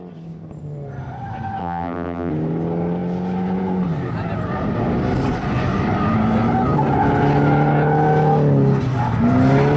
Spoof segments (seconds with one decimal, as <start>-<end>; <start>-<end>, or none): 1.6-2.3